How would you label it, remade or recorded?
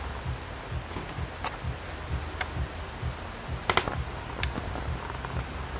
recorded